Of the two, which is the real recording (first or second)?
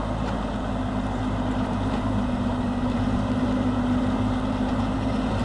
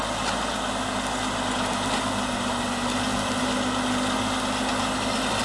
second